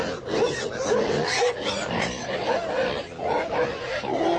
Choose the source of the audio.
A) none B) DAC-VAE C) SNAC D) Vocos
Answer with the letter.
A